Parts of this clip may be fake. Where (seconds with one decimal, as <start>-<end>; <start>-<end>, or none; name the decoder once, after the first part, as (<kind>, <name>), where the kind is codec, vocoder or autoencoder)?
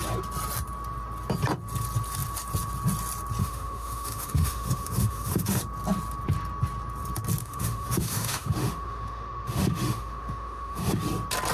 3.4-5.6 (autoencoder, DAC-VAE); 7.4-11.0